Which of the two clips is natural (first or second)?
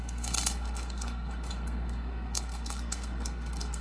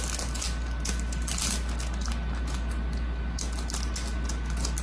second